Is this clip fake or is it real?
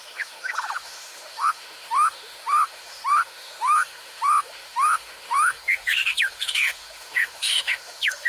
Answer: fake